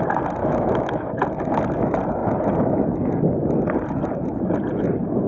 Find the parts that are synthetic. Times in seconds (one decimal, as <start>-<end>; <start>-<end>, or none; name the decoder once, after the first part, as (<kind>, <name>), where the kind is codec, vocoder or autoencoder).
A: 0.4-1.1 (autoencoder, DAC-VAE)